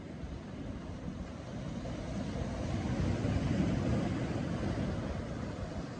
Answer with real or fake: real